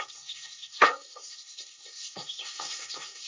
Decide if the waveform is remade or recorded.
remade